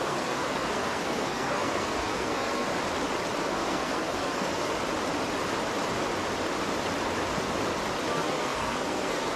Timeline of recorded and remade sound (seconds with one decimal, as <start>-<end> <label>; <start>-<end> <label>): 0.0-2.7 remade; 2.7-3.4 recorded; 3.4-4.7 remade; 4.7-8.1 recorded; 8.1-9.4 remade